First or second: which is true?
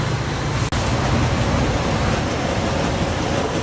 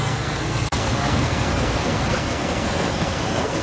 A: first